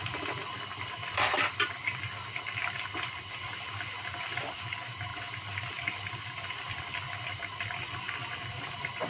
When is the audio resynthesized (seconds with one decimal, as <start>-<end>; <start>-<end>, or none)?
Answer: none